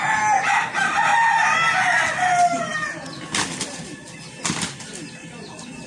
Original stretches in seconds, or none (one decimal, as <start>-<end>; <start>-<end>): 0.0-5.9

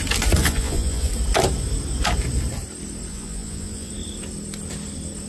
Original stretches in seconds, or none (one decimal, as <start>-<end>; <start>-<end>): 0.0-0.4; 1.1-3.1; 3.9-5.3

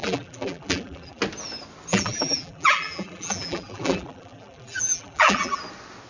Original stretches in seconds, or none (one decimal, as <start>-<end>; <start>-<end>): 1.2-1.9; 5.6-6.1

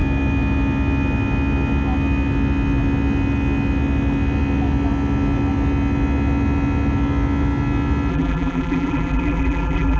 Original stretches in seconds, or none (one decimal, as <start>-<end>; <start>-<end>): 0.0-8.1

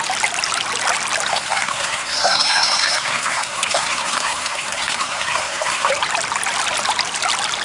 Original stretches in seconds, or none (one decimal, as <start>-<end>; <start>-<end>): 0.0-1.3; 5.9-7.6

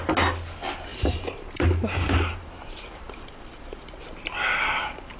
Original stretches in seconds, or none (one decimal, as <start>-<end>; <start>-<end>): 0.0-0.9; 4.0-5.2

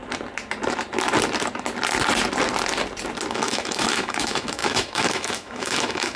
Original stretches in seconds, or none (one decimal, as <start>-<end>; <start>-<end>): 0.0-3.3